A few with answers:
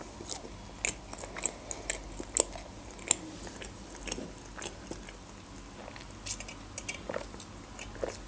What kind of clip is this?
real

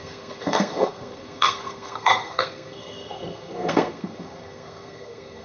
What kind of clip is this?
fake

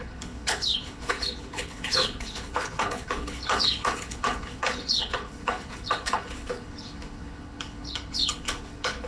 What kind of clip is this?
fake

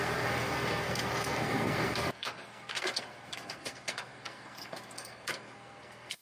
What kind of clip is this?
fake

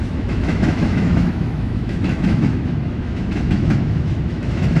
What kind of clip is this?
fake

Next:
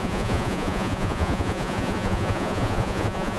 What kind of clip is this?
fake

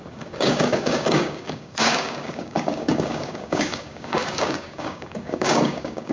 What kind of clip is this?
fake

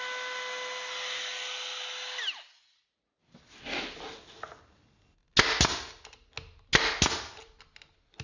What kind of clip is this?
real